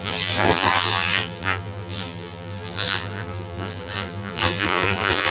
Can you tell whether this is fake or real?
fake